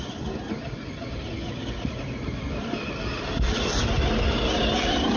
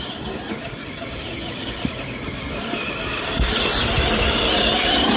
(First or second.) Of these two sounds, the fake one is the second